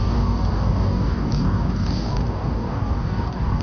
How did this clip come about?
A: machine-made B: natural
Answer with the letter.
A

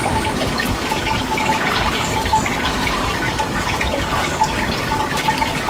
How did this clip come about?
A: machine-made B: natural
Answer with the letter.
A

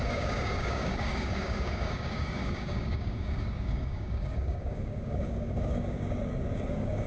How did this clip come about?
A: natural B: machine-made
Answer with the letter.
B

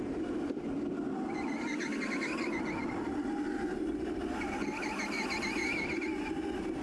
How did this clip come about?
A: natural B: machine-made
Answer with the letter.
A